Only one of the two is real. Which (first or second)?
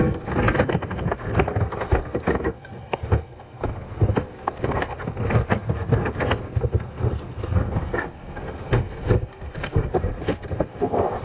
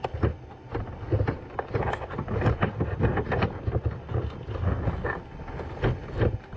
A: second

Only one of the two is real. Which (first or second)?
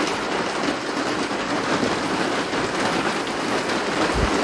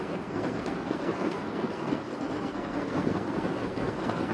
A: first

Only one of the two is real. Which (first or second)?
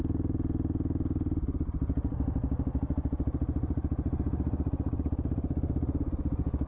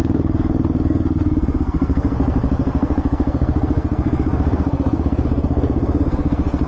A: first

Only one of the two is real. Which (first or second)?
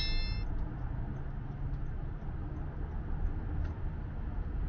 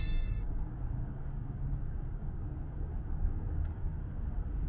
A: first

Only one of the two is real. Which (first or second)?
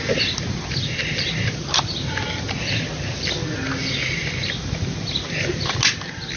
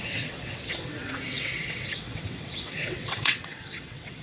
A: first